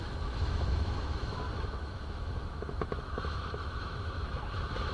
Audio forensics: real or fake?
fake